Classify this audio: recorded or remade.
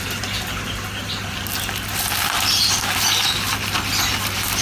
recorded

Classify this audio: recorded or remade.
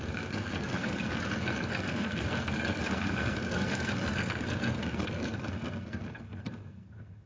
remade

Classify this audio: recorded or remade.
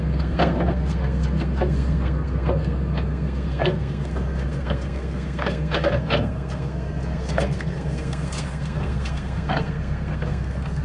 remade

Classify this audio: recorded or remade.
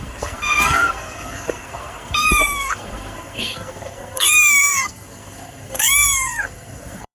remade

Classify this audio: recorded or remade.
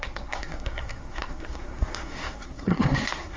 remade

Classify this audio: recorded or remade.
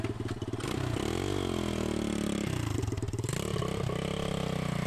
recorded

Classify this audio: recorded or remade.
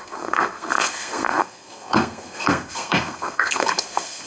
remade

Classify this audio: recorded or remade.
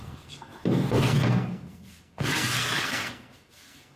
remade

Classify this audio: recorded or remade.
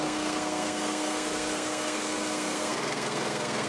remade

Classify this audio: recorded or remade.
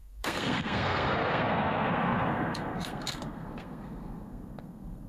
remade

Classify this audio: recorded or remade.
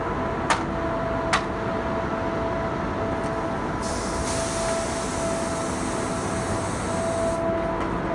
recorded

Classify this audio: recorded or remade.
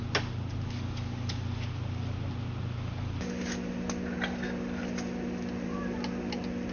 recorded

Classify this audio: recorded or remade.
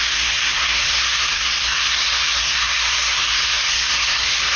remade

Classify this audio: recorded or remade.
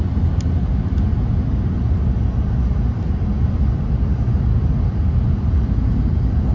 recorded